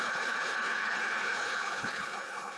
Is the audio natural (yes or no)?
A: no